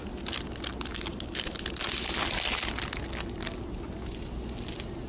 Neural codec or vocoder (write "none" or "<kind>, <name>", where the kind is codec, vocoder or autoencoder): none